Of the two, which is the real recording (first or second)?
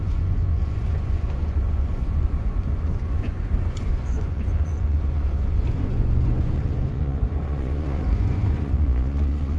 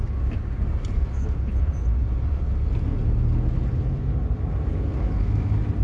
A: second